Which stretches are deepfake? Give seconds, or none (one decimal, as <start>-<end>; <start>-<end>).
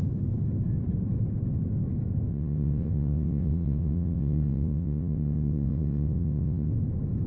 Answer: 2.3-6.7